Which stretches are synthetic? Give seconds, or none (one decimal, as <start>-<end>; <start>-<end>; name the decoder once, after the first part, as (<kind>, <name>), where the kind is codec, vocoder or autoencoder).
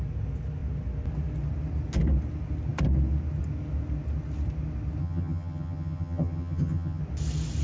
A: 5.0-7.0 (vocoder, HiFi-GAN)